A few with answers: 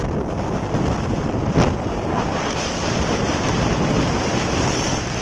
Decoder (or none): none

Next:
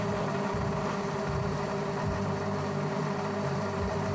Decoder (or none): vocoder, BigVGAN v2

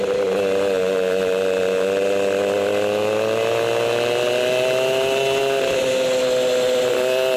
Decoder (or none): none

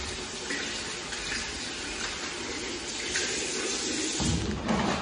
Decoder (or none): none